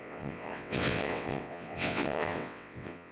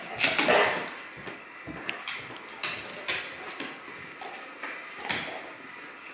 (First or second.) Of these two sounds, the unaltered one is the second